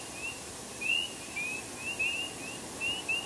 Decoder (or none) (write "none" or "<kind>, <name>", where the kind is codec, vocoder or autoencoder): none